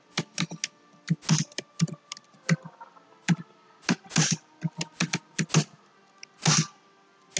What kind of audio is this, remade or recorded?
recorded